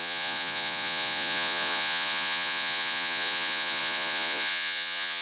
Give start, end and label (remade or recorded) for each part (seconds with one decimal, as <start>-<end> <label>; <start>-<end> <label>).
0.0-5.2 remade